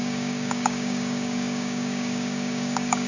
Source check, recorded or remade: remade